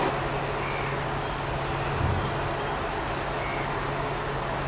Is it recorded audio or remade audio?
recorded